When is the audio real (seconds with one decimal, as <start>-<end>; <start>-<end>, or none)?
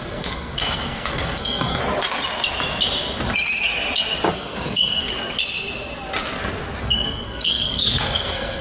1.8-4.3; 5.1-6.8